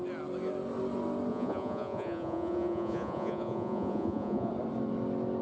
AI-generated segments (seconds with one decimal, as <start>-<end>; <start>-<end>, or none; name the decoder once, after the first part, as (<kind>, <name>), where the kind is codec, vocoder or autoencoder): 1.3-4.5 (vocoder, Vocos)